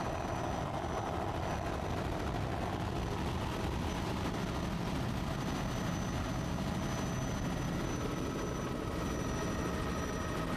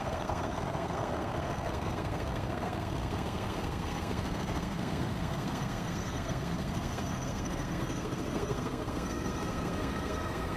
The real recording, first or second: first